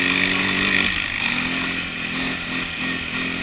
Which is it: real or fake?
real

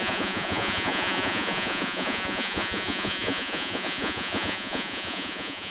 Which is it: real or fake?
fake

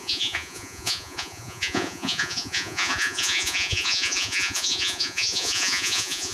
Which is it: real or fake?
fake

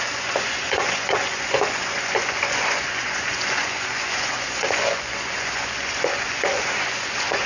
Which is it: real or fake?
fake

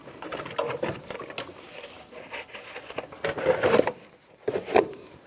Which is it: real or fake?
real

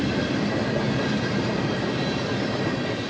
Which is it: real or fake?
real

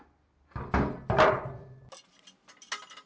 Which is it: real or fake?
real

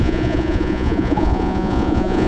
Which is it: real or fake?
fake